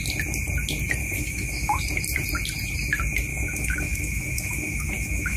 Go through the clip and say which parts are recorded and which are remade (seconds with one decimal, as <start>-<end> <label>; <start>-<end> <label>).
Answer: 0.0-1.0 recorded; 1.0-1.8 remade; 1.8-3.3 recorded; 3.3-5.4 remade